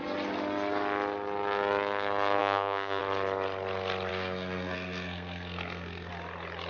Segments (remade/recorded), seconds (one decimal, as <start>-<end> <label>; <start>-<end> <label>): 0.0-2.4 recorded; 2.4-3.0 remade; 3.0-4.1 recorded; 4.1-6.1 remade; 6.1-6.7 recorded